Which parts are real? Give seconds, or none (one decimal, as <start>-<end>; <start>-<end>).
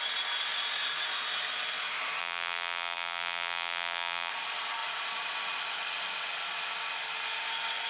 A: 0.0-2.2; 4.3-7.9